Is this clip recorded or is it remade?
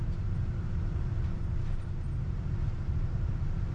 remade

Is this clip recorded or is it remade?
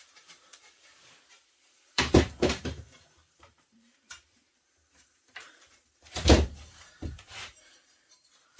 remade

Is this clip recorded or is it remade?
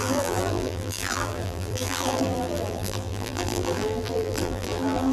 remade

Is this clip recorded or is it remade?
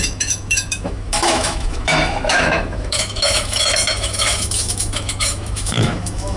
remade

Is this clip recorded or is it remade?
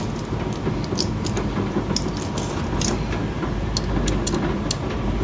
recorded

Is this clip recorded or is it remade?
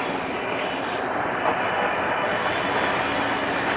recorded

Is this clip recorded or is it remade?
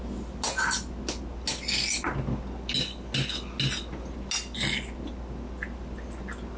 recorded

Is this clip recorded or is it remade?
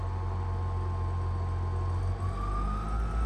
recorded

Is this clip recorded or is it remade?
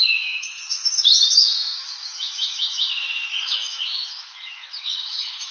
remade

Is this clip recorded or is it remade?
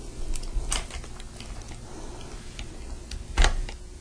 recorded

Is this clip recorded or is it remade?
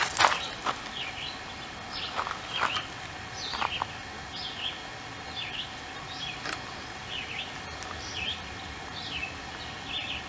recorded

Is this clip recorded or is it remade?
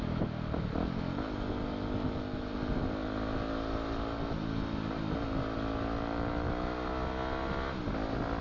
recorded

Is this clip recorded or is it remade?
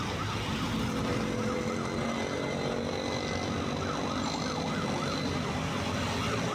recorded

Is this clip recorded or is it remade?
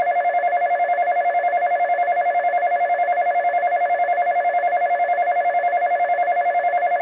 recorded